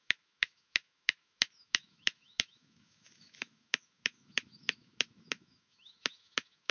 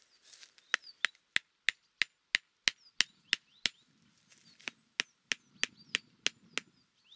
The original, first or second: second